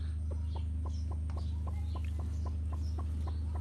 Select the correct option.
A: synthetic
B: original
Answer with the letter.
B